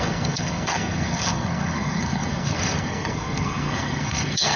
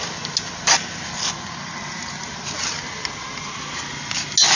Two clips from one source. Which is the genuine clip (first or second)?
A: second